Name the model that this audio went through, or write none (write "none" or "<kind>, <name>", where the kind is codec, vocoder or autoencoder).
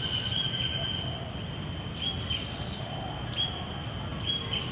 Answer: none